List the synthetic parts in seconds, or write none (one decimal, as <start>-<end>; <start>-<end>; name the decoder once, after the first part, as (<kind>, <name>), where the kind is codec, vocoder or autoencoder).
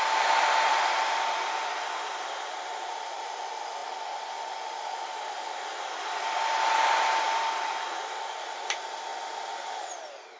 0.0-10.4 (vocoder, BigVGAN v2)